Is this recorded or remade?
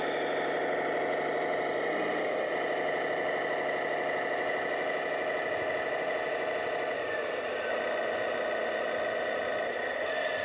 recorded